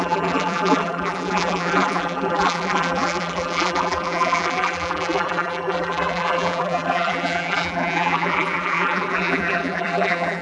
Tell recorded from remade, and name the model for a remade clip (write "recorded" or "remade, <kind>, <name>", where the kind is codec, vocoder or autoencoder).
remade, vocoder, BigVGAN v2